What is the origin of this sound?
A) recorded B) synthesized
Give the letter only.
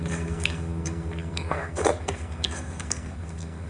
B